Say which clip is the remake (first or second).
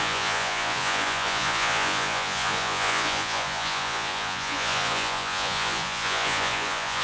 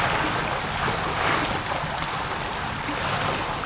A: first